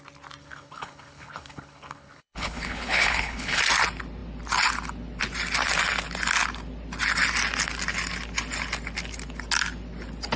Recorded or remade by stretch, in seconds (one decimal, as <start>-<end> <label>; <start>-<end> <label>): 0.0-0.4 recorded; 0.4-3.6 remade; 3.6-10.4 recorded